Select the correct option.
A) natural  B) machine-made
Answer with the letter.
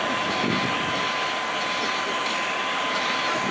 A